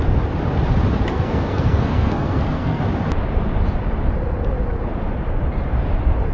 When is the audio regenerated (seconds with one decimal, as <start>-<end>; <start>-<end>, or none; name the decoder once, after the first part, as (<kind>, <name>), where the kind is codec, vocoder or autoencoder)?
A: 1.1-2.8 (codec, SNAC)